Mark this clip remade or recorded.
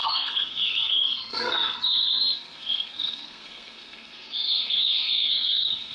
remade